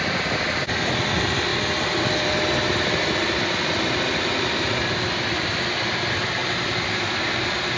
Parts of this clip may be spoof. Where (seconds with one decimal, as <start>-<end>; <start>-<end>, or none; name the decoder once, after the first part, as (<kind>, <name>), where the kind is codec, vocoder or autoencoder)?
0.0-1.5 (vocoder, BigVGAN v2); 5.3-6.4; 7.0-7.8